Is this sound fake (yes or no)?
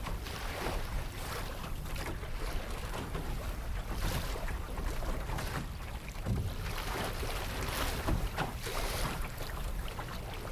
yes